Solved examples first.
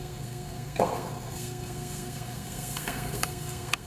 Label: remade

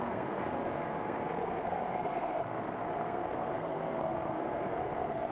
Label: remade